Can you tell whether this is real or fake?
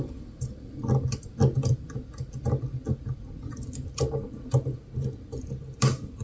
real